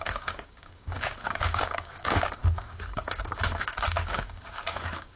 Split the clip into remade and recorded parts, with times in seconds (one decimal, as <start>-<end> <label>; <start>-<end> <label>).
0.0-5.2 remade